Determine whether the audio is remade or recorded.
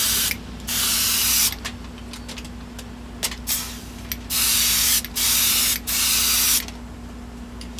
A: recorded